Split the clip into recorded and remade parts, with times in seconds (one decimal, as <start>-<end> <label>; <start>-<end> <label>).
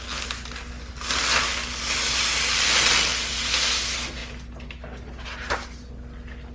0.0-6.5 recorded